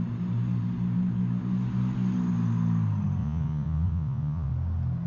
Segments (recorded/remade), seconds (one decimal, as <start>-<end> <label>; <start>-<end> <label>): 0.0-3.2 recorded; 3.2-4.5 remade; 4.5-5.1 recorded